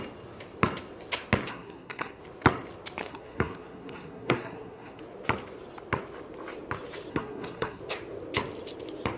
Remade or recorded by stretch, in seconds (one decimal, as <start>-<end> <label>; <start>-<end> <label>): 0.0-1.5 recorded; 1.5-2.2 remade; 2.2-3.1 recorded; 3.1-5.0 remade; 5.0-7.1 recorded; 7.1-7.8 remade; 7.8-9.2 recorded